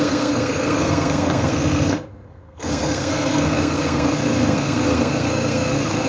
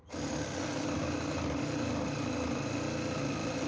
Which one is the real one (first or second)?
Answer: second